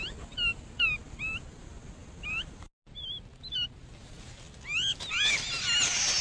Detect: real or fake real